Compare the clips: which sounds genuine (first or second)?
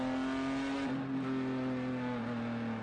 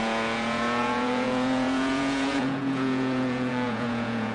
first